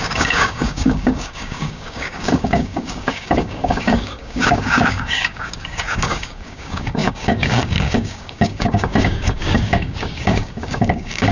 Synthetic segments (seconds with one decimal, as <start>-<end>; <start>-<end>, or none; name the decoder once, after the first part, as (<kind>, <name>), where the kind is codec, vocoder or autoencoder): 0.0-11.3 (codec, DAC)